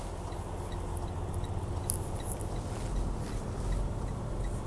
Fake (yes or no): no